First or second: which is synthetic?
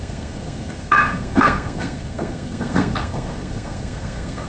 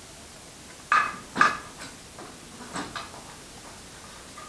first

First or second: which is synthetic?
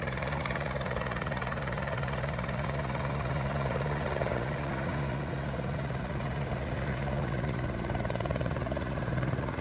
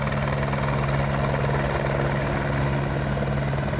first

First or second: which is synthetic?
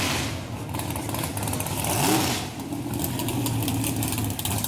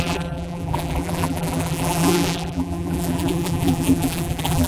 second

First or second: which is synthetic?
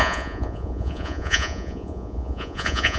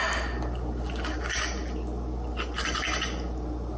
first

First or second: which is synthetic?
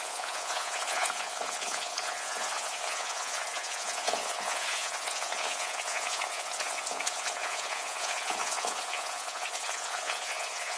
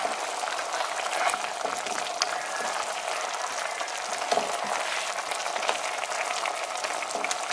first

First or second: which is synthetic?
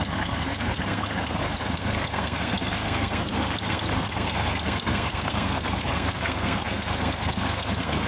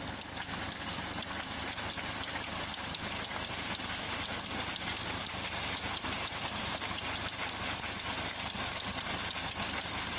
first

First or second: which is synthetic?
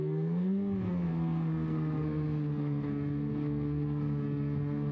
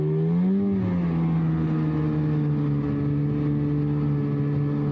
first